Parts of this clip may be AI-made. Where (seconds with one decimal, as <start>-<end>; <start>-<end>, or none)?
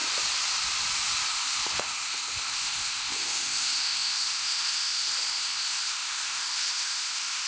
1.3-7.5